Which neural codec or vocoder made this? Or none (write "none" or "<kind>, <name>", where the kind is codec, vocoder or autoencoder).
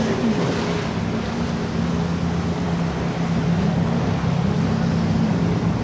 none